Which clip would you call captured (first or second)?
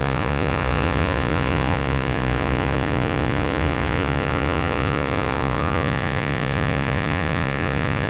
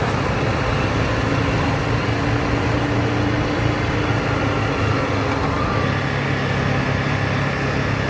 second